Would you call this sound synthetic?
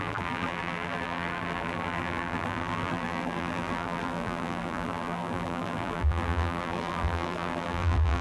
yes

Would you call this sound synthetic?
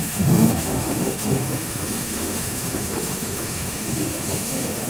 yes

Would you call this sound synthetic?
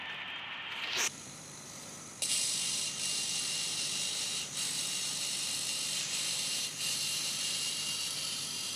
yes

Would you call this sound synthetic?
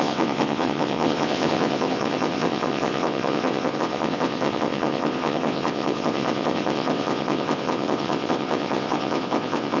yes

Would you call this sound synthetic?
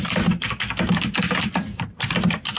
no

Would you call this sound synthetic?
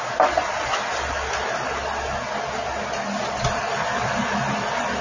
no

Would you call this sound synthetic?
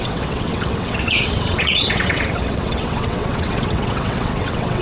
yes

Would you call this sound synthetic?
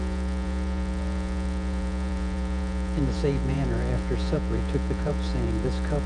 yes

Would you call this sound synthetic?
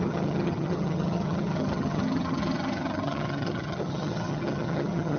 yes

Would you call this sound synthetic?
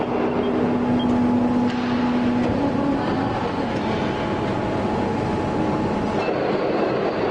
no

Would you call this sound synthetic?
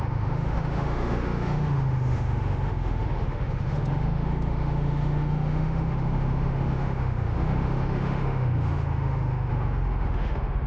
yes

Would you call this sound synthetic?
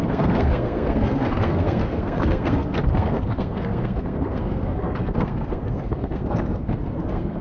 yes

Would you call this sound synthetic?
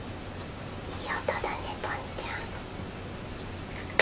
no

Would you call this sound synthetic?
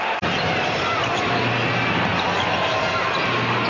no